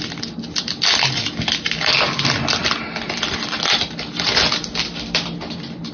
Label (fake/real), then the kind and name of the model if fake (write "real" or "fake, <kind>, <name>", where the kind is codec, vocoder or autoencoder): real